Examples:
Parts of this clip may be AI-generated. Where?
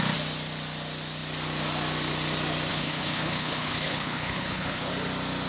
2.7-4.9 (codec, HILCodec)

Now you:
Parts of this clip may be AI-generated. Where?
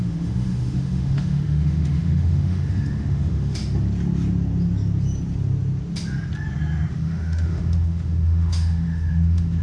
0.0-3.6 (autoencoder, DAC-VAE); 6.9-9.6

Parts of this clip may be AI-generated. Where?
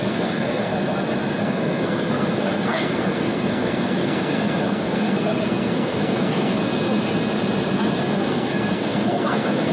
0.0-0.7 (codec, SNAC); 1.4-6.6; 8.0-9.7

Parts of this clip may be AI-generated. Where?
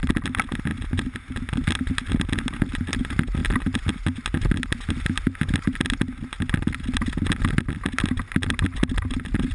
none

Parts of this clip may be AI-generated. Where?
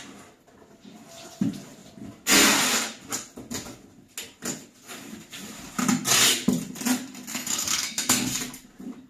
7.3-8.3 (codec, SNAC)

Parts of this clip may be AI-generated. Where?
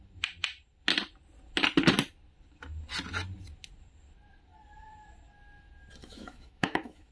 6.0-7.1 (autoencoder, DAC-VAE)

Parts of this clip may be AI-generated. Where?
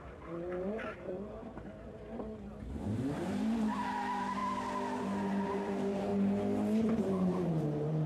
0.0-1.4 (vocoder, BigVGAN v2); 2.6-4.4; 5.0-6.1; 7.0-8.1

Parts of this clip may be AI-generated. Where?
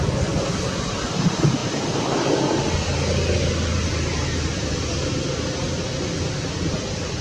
none